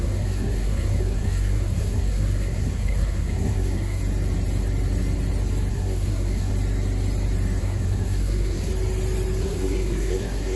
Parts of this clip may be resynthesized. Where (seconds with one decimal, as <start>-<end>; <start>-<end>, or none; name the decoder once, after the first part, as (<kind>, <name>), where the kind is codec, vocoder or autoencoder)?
0.0-4.0 (codec, SNAC); 5.7-6.5; 7.6-8.7; 9.4-10.6